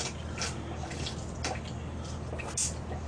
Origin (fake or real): real